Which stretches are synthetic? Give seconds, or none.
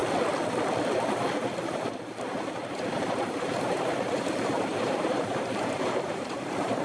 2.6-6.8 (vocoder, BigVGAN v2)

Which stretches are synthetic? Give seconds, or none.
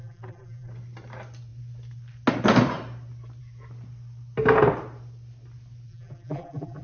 0.0-0.7 (vocoder, BigVGAN v2); 5.9-6.8